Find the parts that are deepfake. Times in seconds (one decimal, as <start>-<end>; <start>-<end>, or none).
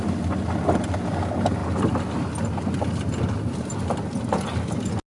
none